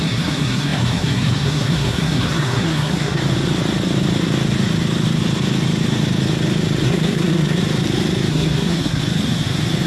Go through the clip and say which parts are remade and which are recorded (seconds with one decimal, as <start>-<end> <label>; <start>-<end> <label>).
0.0-3.2 remade; 3.2-6.8 recorded; 6.8-7.6 remade; 7.6-8.3 recorded; 8.3-9.0 remade; 9.0-9.9 recorded